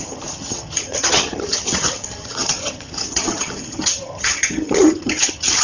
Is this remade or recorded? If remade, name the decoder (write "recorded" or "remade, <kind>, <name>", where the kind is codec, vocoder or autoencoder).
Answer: remade, vocoder, HiFi-GAN